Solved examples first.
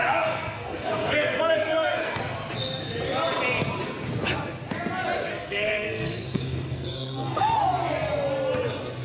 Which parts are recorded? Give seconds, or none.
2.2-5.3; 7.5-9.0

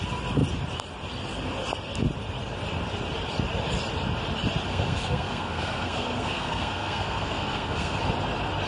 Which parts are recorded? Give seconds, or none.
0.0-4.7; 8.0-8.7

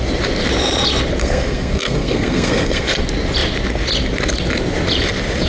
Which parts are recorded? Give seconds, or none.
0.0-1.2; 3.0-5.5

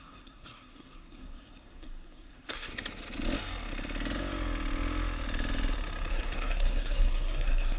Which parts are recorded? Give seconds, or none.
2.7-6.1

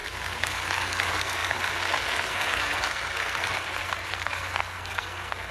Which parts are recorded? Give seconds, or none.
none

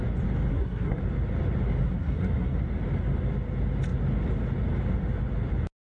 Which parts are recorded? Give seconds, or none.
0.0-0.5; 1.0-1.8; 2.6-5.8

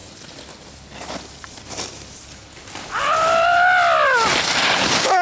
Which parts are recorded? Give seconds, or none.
0.0-5.2

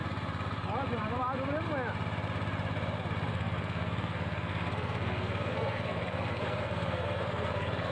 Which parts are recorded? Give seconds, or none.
0.0-3.3